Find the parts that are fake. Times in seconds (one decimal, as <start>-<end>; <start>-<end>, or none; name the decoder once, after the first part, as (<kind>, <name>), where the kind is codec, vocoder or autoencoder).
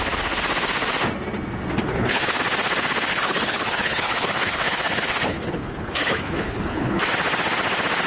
1.9-2.4 (codec, HILCodec); 3.1-7.1